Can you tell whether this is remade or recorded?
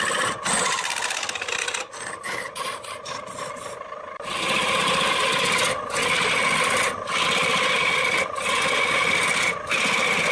recorded